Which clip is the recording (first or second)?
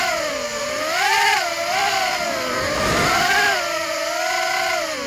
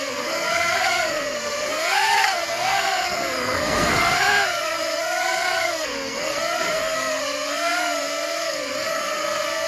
first